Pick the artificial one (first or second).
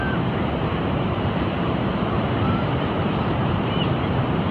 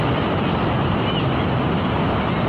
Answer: first